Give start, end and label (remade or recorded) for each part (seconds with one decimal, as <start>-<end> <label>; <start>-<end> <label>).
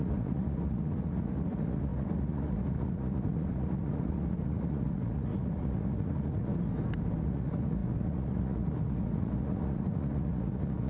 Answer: 0.0-6.5 remade; 6.5-7.2 recorded; 7.2-10.9 remade